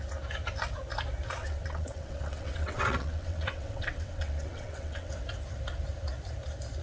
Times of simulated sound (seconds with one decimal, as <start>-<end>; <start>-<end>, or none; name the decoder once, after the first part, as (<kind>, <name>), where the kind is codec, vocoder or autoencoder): 1.4-5.1 (vocoder, WaveNeXt)